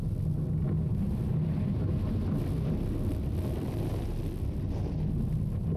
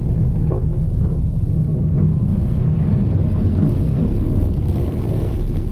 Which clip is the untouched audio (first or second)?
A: first